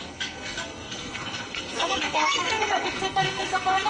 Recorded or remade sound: remade